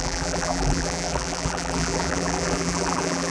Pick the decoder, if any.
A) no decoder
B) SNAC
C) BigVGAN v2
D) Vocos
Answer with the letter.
C